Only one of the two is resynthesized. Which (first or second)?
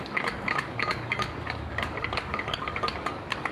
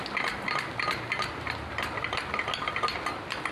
first